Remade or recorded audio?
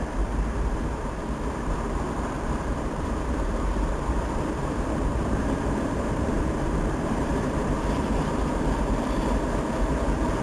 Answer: remade